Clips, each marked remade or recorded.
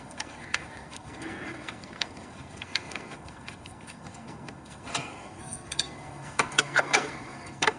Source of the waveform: remade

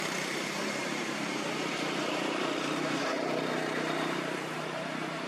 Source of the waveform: remade